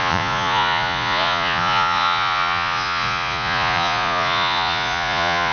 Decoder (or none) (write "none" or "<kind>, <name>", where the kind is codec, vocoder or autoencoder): vocoder, Vocos